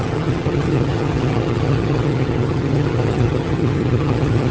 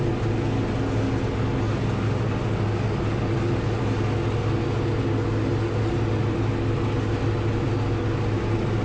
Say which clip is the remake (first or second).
first